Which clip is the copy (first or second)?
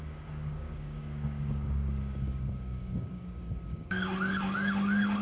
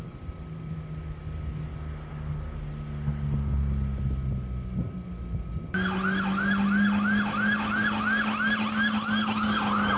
first